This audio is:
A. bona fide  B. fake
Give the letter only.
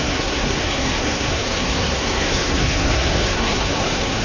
B